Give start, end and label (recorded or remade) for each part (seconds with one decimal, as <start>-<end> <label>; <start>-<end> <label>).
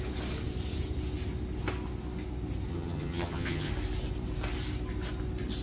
0.0-2.7 recorded; 2.7-3.7 remade; 3.7-5.6 recorded